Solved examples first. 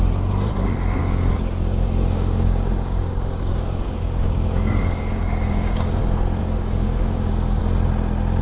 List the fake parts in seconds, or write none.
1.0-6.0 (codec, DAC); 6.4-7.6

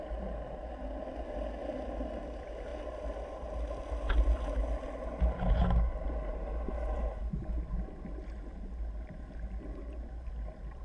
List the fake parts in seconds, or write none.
none